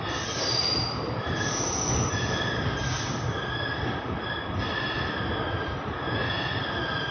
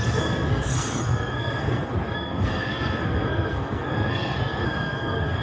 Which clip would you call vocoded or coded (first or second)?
second